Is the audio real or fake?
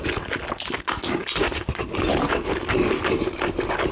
real